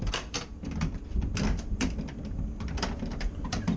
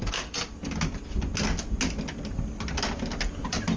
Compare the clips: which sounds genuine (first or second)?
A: second